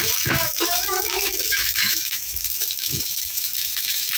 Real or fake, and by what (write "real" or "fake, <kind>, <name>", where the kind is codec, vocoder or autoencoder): fake, autoencoder, DAC-VAE